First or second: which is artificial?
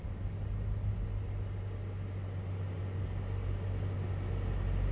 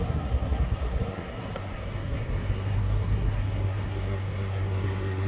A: second